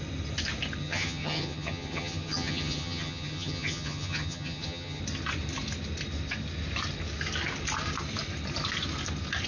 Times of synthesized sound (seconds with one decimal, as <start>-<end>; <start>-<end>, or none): 0.8-5.0